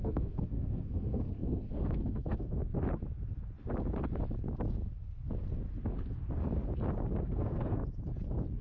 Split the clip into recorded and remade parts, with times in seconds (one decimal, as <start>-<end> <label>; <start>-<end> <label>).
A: 0.0-2.6 remade; 2.6-7.2 recorded; 7.2-7.8 remade; 7.8-8.6 recorded